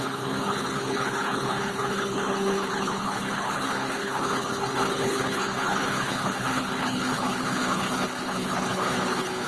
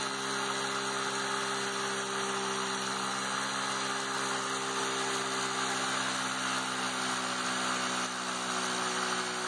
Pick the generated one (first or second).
first